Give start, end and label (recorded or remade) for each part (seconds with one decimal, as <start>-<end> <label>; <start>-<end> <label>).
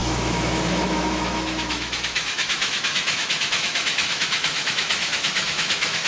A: 0.0-6.1 remade